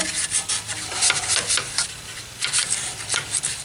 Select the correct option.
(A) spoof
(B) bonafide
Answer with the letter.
B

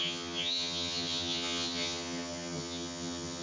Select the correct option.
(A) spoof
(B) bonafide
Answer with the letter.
A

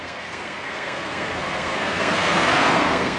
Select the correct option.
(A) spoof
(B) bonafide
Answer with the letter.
A